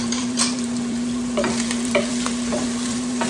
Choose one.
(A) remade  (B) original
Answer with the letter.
A